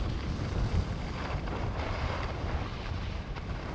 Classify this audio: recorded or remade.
recorded